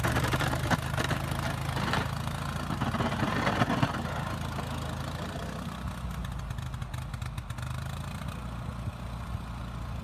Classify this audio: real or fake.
real